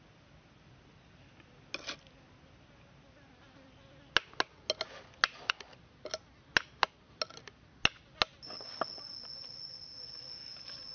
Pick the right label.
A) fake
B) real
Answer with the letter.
B